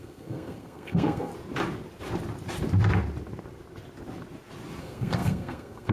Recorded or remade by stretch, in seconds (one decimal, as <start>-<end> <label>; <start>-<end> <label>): 0.0-1.3 remade; 1.3-4.8 recorded; 4.8-5.9 remade